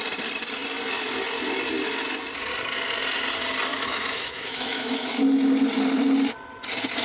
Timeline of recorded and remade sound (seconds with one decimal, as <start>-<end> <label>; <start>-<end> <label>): 0.0-3.7 recorded; 3.7-5.2 remade; 5.2-7.0 recorded